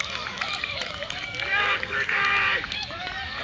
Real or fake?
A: fake